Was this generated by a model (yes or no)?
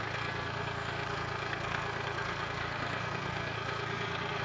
yes